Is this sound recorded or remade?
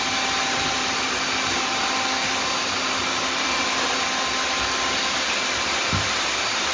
recorded